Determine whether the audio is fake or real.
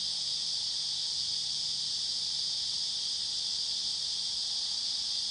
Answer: real